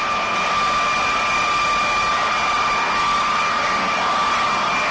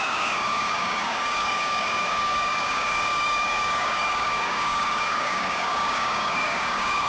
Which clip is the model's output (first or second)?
second